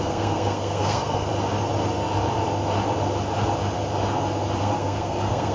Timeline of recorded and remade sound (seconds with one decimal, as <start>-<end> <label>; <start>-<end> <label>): 0.0-1.3 remade; 1.3-4.6 recorded; 4.6-5.5 remade